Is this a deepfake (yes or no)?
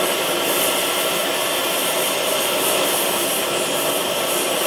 yes